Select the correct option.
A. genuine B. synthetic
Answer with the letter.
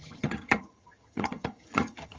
B